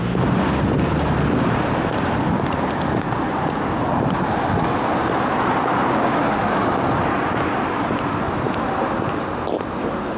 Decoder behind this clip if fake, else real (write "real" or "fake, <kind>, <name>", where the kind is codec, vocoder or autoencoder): real